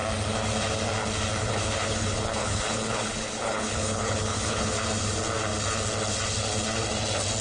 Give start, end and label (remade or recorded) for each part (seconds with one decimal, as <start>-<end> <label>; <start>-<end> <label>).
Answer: 0.0-1.4 recorded; 1.4-4.7 remade; 4.7-7.4 recorded

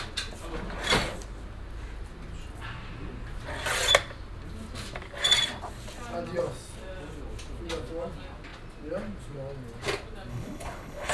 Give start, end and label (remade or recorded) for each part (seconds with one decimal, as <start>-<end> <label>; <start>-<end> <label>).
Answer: 0.0-10.3 recorded; 10.3-11.1 remade